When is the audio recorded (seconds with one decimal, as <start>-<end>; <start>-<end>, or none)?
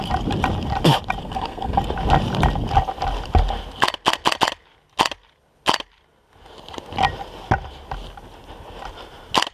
0.0-1.2; 1.8-9.5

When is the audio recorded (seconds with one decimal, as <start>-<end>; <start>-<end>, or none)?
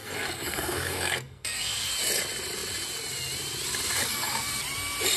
1.9-4.0; 4.6-5.2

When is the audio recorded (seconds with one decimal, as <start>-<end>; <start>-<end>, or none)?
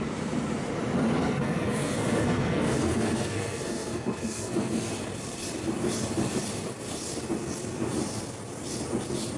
0.0-1.2; 4.9-9.4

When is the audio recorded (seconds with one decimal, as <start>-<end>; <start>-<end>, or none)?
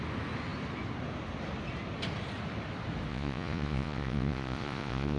0.0-3.1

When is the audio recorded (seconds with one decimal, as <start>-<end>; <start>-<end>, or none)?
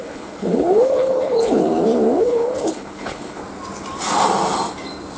1.6-2.2; 3.4-5.2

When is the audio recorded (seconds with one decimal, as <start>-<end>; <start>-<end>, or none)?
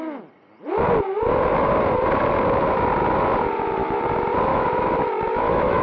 0.0-4.5